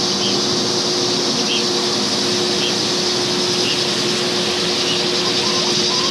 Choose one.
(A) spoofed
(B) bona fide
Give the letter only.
B